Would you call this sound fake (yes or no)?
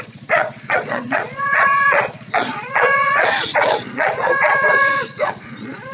yes